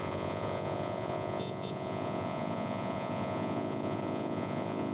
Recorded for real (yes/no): no